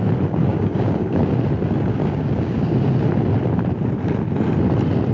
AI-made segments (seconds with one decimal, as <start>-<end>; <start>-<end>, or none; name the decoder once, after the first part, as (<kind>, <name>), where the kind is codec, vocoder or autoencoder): 0.5-1.2 (codec, DAC); 2.0-2.7